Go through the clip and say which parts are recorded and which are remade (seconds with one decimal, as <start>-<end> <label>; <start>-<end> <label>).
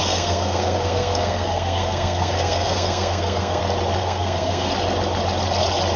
0.0-3.6 remade; 3.6-4.0 recorded; 4.0-4.7 remade; 4.7-6.0 recorded